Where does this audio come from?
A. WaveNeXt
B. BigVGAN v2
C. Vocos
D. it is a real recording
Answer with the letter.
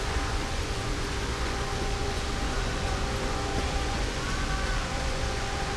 C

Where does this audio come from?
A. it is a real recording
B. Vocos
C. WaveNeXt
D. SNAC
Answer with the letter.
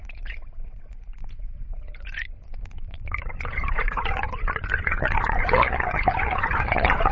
B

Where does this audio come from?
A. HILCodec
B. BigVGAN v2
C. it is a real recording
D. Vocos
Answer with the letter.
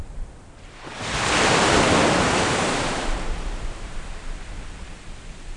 C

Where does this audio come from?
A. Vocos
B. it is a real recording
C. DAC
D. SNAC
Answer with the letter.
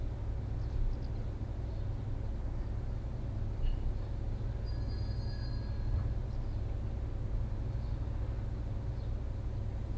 B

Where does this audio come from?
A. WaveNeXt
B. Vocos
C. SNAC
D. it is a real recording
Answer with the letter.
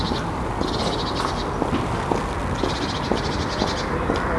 D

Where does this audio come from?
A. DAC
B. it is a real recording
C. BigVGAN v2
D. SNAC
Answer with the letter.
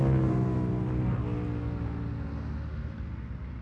B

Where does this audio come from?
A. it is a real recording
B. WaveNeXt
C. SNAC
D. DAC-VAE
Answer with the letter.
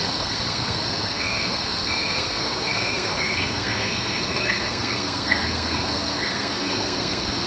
C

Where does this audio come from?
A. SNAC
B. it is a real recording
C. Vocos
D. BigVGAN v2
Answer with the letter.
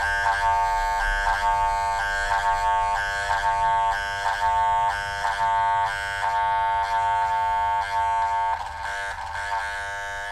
B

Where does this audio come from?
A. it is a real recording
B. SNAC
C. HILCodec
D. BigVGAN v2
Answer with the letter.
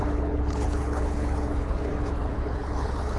C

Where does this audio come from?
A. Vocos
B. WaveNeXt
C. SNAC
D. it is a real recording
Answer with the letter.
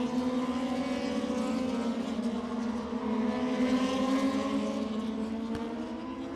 D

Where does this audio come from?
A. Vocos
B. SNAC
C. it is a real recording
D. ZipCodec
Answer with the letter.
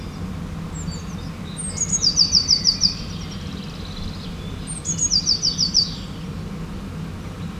C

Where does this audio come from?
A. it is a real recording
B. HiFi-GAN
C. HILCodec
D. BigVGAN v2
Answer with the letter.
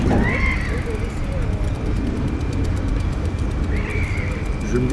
D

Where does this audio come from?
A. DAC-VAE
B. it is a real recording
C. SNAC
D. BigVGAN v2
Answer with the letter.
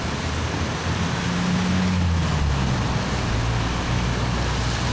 B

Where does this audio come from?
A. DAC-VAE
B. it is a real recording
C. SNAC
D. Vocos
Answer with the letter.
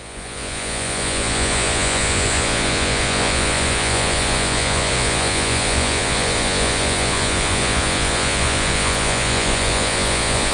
D